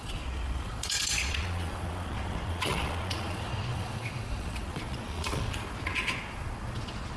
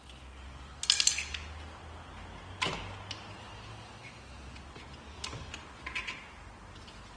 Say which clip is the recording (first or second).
second